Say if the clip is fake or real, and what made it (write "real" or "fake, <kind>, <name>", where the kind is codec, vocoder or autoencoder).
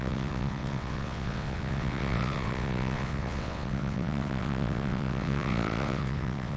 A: fake, vocoder, WaveNeXt